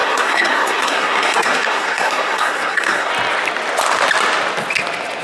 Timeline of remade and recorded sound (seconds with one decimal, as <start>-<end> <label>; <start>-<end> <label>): 0.0-3.1 remade; 3.1-5.2 recorded